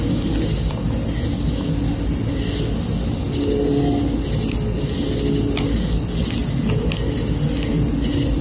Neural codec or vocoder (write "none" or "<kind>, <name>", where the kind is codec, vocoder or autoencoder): none